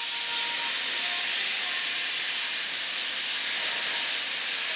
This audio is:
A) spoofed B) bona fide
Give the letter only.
B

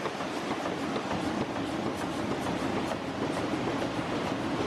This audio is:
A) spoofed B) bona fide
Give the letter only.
B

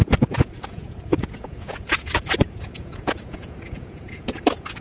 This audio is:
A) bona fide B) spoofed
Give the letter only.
B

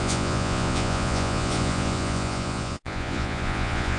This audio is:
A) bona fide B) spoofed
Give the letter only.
B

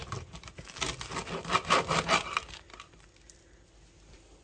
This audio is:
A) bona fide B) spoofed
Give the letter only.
A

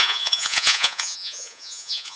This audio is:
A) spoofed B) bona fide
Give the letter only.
A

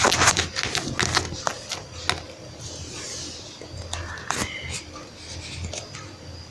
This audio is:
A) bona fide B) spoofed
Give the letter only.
A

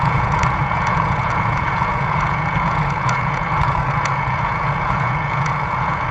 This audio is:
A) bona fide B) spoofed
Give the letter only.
B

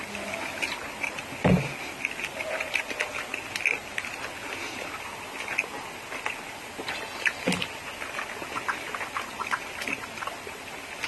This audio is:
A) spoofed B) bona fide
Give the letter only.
B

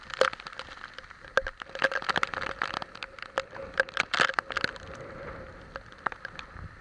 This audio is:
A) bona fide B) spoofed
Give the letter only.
A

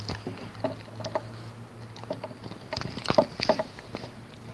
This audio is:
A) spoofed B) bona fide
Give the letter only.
B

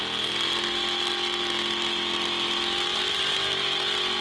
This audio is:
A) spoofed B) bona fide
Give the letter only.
B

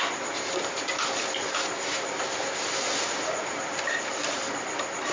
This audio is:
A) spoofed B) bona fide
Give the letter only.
B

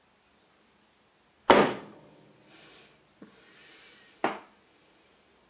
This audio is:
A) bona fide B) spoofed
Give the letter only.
A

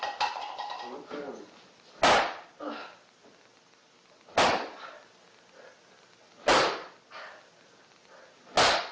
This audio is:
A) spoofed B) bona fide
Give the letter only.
B